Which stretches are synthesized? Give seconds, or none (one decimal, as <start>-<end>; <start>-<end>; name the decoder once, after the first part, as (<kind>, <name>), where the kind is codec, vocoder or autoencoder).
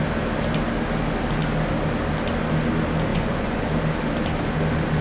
3.1-3.7 (vocoder, Vocos)